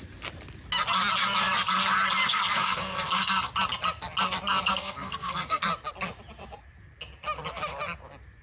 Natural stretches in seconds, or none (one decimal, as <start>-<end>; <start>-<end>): 0.0-2.3; 3.5-4.7; 5.6-8.4